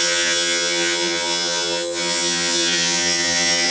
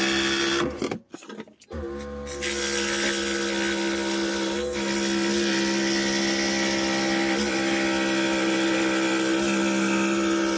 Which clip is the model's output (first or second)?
first